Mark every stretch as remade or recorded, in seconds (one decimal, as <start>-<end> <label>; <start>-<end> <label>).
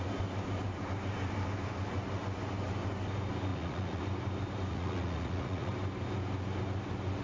0.0-3.5 recorded; 3.5-4.0 remade; 4.0-4.7 recorded; 4.7-5.7 remade; 5.7-7.2 recorded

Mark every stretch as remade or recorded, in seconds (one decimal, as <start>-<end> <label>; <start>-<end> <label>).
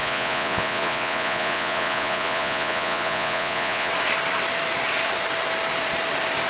0.0-3.9 remade; 3.9-6.5 recorded